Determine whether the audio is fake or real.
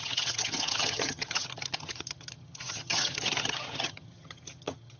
fake